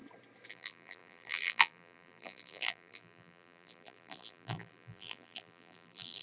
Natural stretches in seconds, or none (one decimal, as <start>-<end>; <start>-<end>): 0.0-0.5

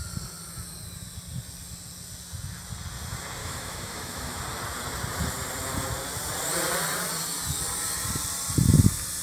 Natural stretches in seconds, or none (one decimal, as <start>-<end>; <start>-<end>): 0.0-3.4; 4.4-9.2

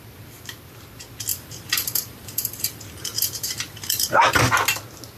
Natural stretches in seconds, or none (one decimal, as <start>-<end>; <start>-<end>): 0.0-1.3; 4.4-5.2

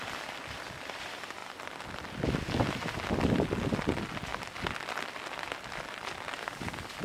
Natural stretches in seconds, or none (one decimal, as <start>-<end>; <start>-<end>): 0.0-7.0

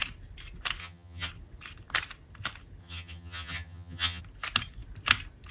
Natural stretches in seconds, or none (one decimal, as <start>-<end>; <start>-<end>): 0.0-0.8; 1.3-2.8; 4.2-5.5

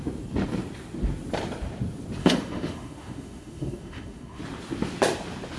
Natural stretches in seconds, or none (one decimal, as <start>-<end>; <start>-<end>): 0.0-2.2; 4.4-5.6